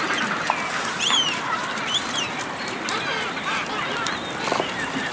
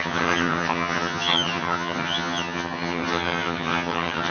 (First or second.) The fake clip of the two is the second